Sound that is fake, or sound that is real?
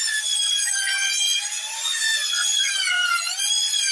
fake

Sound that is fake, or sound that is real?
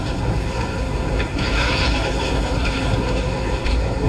fake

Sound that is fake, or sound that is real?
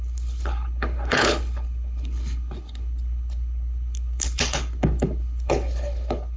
fake